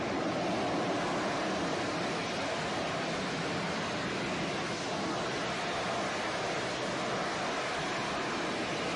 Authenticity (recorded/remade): recorded